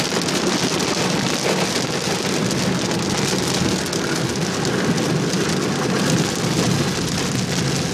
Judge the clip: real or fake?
real